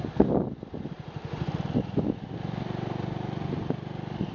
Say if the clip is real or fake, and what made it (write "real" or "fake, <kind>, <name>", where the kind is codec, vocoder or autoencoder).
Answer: real